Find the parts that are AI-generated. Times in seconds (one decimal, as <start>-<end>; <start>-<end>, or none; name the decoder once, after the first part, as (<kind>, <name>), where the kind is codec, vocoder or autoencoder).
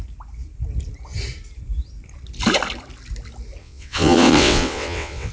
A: 3.6-5.3 (vocoder, WaveNeXt)